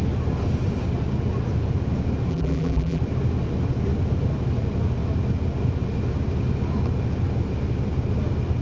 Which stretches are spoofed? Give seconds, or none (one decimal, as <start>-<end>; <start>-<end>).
2.3-3.0